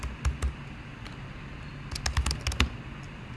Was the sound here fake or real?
real